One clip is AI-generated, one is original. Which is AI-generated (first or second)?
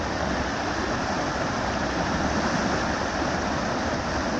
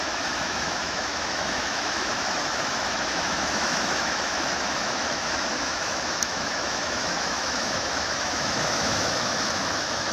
second